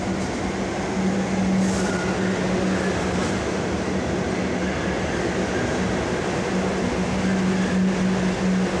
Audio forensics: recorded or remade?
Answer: recorded